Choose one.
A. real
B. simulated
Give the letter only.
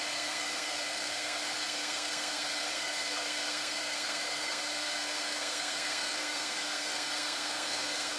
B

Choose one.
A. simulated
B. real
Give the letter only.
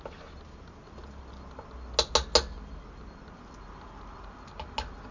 B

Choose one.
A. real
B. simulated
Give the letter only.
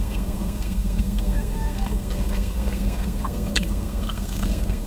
B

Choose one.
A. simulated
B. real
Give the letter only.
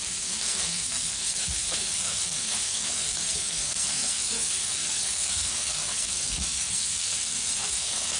A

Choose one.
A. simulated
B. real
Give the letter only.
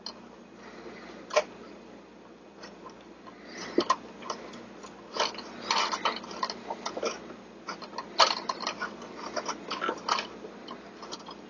B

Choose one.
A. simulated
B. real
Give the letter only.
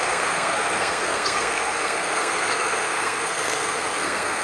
A